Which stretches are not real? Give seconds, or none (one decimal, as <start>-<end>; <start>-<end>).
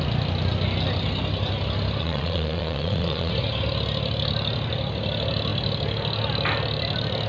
2.0-3.3